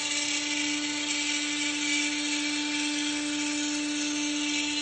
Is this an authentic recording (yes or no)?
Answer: yes